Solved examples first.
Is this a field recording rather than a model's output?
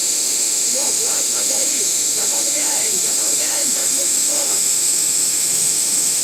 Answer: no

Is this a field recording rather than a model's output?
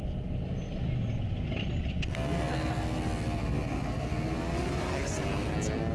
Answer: yes